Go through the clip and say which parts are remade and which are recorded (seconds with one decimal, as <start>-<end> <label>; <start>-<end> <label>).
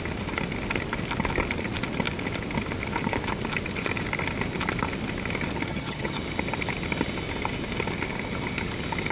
0.0-5.7 recorded; 5.7-6.2 remade; 6.2-9.1 recorded